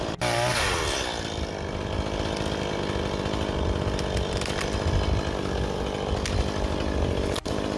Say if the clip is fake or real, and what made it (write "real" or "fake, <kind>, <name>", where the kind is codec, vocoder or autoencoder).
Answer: real